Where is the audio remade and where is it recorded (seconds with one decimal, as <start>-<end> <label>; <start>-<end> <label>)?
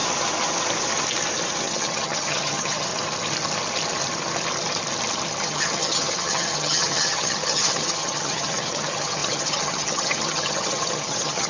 0.0-1.6 recorded; 1.6-2.9 remade; 2.9-5.4 recorded; 5.4-11.5 remade